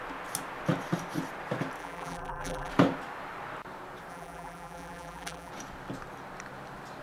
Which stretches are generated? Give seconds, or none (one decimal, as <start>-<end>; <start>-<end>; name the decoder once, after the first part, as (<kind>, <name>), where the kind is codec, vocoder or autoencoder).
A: 1.8-2.7 (vocoder, BigVGAN v2); 4.1-5.5